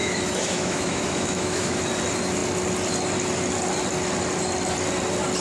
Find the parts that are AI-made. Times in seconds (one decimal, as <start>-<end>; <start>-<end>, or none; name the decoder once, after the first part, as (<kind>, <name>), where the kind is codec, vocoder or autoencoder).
0.0-1.8 (autoencoder, DAC-VAE)